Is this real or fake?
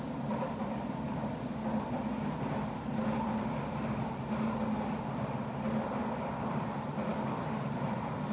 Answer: real